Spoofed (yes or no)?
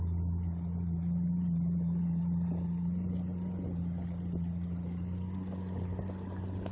no